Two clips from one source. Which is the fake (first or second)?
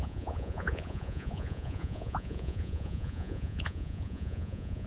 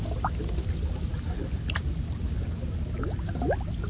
first